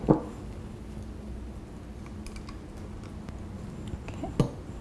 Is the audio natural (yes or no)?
yes